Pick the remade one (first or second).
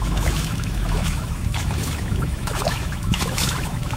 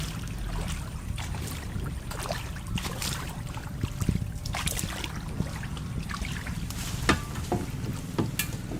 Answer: first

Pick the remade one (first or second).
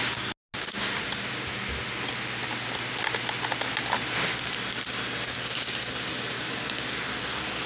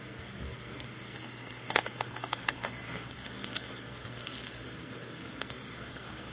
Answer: second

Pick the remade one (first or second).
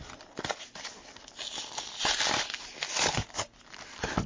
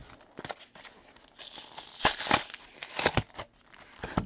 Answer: first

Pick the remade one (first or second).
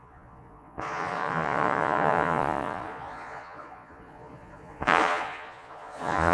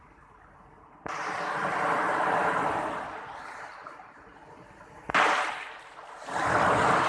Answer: first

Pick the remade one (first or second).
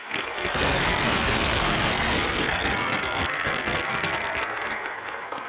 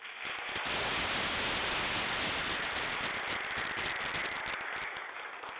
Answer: first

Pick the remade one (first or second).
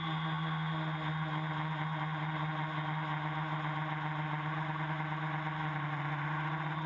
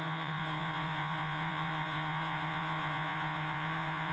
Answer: second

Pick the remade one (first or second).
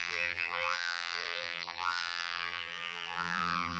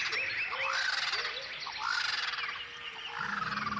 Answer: first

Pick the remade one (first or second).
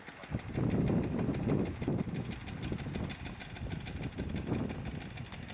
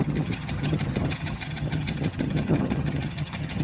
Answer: second